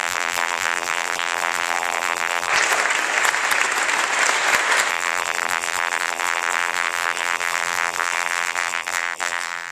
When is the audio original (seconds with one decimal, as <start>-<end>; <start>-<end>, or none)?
2.5-4.9